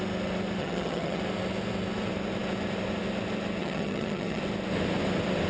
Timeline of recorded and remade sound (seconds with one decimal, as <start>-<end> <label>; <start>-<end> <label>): 0.0-0.6 recorded; 0.6-1.2 remade; 1.2-3.6 recorded; 3.6-4.4 remade; 4.4-5.5 recorded